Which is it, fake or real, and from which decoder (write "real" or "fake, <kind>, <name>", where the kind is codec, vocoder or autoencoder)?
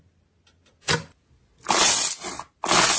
real